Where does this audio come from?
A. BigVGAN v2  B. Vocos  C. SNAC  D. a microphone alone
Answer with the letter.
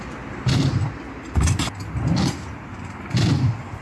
D